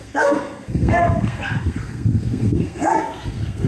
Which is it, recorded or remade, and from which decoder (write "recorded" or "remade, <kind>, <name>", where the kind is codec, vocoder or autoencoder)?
remade, codec, SNAC